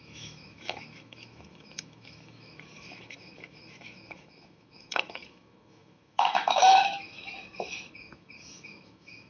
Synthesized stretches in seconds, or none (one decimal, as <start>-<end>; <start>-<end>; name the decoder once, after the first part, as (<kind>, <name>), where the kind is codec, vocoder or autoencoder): 0.0-9.3 (autoencoder, DAC-VAE)